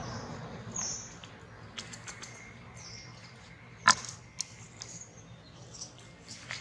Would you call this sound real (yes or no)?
yes